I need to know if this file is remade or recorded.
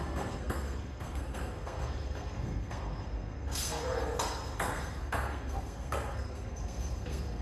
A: remade